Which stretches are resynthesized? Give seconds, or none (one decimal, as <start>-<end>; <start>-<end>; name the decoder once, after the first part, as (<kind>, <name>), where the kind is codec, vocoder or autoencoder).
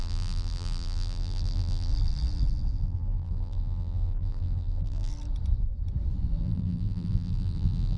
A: 0.0-1.9 (vocoder, BigVGAN v2); 2.8-5.1; 6.4-8.0